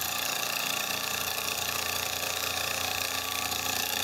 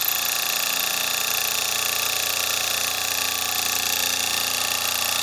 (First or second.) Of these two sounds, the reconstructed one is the first